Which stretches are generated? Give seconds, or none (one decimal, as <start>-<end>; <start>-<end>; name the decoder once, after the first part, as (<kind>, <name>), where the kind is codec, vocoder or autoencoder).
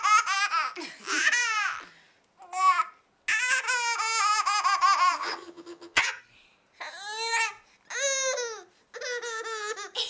5.2-6.2 (vocoder, HiFi-GAN)